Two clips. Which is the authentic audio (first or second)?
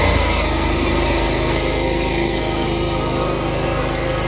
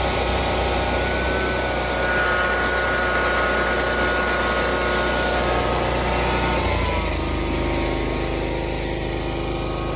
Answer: second